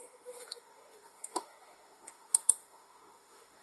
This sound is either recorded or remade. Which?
remade